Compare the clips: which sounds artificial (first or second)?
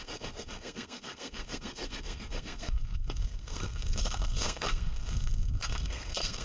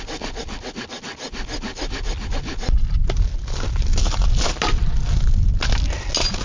first